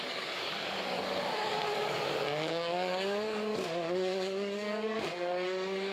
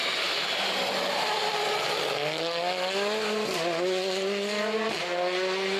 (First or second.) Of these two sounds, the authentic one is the second